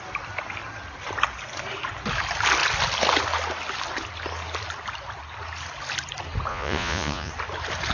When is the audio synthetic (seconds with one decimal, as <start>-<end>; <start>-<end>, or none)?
6.5-7.3